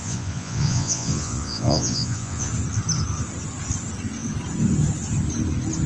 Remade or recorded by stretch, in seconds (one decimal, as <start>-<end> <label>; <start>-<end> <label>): 0.0-2.5 remade; 2.5-5.9 recorded

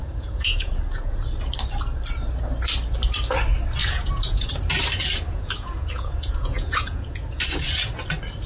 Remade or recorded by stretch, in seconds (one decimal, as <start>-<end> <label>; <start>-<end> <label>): 0.0-0.7 remade; 0.7-3.8 recorded; 3.8-4.5 remade; 4.5-5.3 recorded; 5.3-7.4 remade; 7.4-8.5 recorded

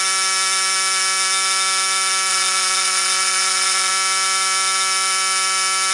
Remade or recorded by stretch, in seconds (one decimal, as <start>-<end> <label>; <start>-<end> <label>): 0.0-2.3 recorded; 2.3-3.9 remade; 3.9-5.9 recorded